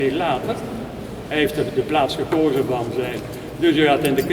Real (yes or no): yes